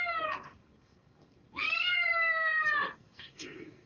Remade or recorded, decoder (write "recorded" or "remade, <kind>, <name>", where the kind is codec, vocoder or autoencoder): remade, codec, SNAC